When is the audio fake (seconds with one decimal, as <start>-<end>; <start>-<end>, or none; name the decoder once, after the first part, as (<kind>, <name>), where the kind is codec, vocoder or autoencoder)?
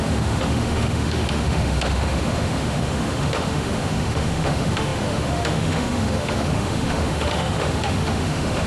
0.0-8.7 (autoencoder, DAC-VAE)